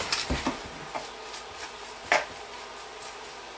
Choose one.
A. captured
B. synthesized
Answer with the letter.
A